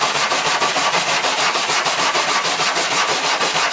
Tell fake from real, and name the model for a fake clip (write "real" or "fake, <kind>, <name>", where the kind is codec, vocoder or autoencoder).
fake, vocoder, BigVGAN v2